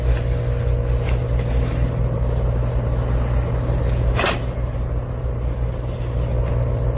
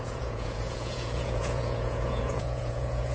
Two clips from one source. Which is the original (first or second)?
first